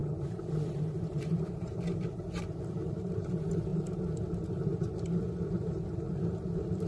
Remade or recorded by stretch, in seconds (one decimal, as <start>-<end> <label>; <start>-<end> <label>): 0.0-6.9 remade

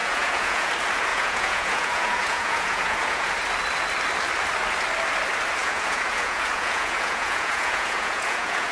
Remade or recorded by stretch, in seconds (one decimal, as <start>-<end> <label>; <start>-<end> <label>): 0.0-0.7 remade; 0.7-1.1 recorded; 1.1-3.3 remade; 3.3-5.6 recorded; 5.6-8.7 remade

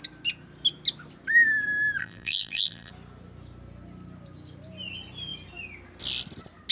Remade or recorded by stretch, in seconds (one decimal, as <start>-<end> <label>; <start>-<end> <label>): 0.0-2.0 recorded; 2.0-2.9 remade; 2.9-6.7 recorded

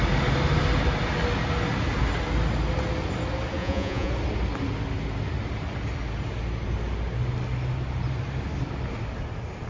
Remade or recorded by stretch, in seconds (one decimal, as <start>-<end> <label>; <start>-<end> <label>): 0.0-3.6 recorded; 3.6-4.1 remade; 4.1-9.7 recorded